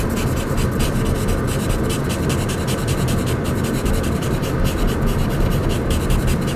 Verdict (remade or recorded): remade